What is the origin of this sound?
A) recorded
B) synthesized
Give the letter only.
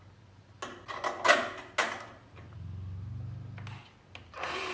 A